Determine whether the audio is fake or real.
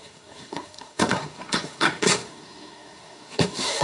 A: fake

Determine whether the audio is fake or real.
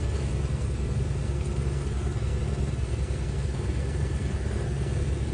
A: fake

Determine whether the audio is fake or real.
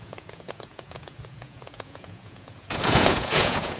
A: fake